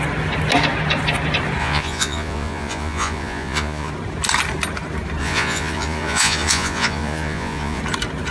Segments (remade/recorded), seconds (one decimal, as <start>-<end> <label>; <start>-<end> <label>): 0.0-1.6 recorded; 1.6-3.9 remade; 3.9-5.2 recorded; 5.2-7.8 remade; 7.8-8.3 recorded